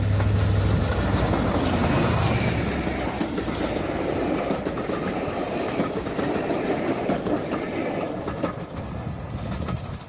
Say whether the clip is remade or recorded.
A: recorded